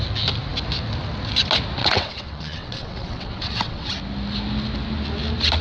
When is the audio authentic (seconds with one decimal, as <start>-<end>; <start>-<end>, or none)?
0.0-1.8; 3.9-5.6